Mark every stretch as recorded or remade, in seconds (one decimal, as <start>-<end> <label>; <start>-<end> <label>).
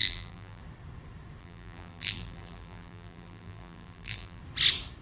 0.0-0.6 remade; 0.6-1.4 recorded; 1.4-4.4 remade; 4.4-5.0 recorded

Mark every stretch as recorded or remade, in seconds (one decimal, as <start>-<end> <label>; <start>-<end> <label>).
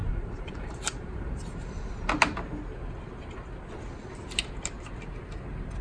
0.0-2.1 remade; 2.1-5.8 recorded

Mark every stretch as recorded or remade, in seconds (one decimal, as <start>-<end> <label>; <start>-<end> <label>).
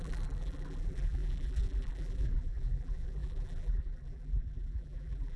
0.0-5.4 remade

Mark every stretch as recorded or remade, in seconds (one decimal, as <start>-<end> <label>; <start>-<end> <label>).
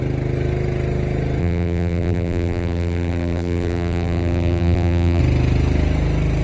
0.0-1.4 recorded; 1.4-5.2 remade; 5.2-6.4 recorded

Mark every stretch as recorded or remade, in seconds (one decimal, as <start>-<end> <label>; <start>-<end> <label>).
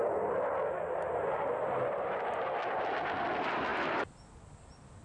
0.0-3.7 remade; 3.7-5.0 recorded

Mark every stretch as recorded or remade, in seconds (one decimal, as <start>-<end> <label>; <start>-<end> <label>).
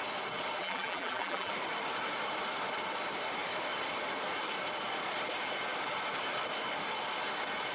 0.0-0.6 recorded; 0.6-1.5 remade; 1.5-7.7 recorded